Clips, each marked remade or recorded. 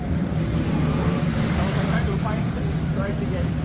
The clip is remade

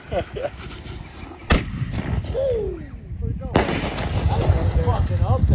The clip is recorded